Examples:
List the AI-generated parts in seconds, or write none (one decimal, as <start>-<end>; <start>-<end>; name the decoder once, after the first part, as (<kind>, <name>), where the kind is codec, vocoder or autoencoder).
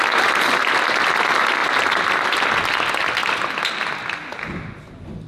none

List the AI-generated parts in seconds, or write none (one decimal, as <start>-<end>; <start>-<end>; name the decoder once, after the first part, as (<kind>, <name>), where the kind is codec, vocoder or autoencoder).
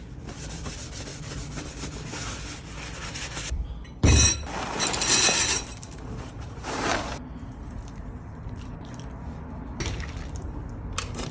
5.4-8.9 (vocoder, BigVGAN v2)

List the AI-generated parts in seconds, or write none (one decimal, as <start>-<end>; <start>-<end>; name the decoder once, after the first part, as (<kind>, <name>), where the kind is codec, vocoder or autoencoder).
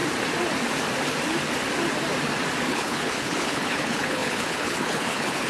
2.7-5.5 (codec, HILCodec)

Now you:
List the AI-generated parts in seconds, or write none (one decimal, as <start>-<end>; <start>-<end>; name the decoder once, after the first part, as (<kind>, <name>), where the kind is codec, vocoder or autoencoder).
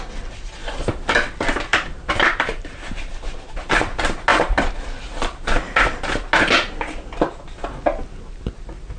0.6-1.1 (vocoder, BigVGAN v2); 1.7-3.5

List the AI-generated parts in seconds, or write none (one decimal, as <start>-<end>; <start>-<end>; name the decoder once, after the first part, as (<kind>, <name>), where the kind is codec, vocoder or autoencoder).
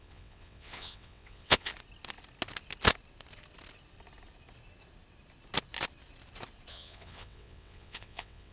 0.0-1.7 (vocoder, WaveNeXt); 6.7-8.5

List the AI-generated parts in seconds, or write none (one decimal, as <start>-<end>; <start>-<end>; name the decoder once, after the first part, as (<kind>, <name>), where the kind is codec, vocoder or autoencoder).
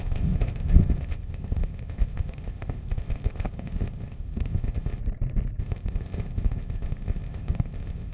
0.0-5.0 (codec, ZipCodec); 5.6-8.1